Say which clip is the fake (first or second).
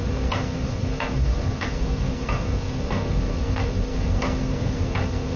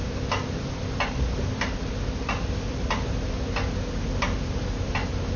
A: first